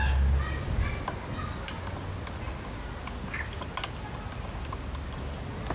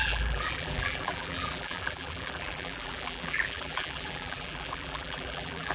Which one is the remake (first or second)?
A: second